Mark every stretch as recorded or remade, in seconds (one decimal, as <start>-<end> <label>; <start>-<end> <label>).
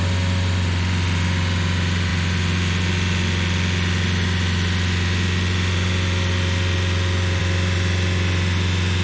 0.0-9.0 recorded